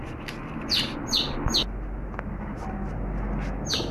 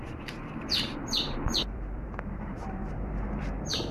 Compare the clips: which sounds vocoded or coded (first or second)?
second